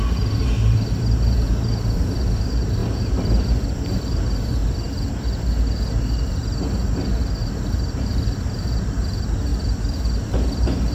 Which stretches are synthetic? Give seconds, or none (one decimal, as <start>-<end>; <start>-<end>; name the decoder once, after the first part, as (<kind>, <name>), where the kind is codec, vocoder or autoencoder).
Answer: 0.0-4.6 (vocoder, BigVGAN v2); 7.7-10.9